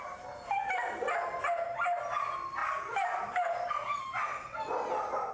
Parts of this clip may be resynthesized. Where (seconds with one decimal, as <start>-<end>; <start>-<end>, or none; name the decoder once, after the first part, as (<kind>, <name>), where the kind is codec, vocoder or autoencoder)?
none